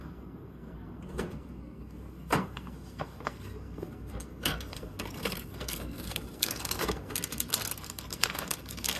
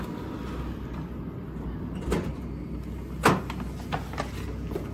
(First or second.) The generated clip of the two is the first